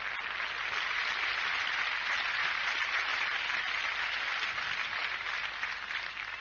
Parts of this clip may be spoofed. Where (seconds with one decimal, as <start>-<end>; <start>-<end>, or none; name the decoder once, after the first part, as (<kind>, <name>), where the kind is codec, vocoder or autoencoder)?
none